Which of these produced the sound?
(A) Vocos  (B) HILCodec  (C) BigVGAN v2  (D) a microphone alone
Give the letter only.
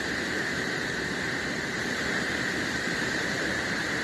C